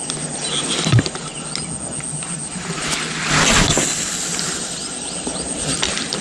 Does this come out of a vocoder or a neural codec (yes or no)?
no